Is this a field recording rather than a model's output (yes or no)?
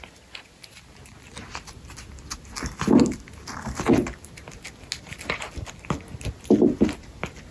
yes